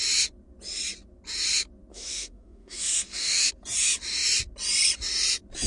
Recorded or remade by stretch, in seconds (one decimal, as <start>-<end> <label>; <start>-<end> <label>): 0.0-1.9 recorded; 1.9-3.5 remade; 3.5-5.7 recorded